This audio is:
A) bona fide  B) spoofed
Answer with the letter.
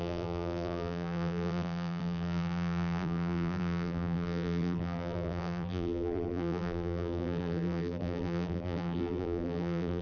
B